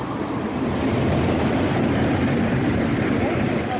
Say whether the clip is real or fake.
real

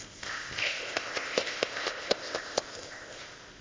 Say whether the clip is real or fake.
fake